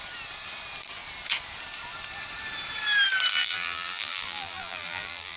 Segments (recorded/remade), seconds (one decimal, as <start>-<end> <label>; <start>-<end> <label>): 0.0-3.3 recorded; 3.3-5.4 remade